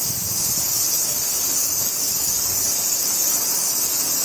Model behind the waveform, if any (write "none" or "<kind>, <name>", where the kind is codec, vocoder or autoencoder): codec, DAC